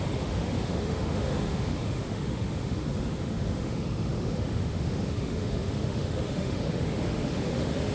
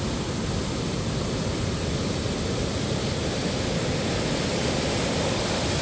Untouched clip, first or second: second